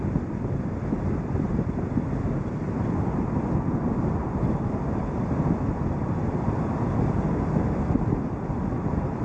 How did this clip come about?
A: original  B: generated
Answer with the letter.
A